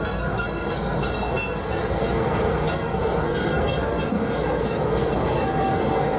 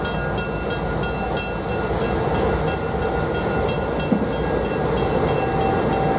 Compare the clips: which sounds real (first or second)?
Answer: second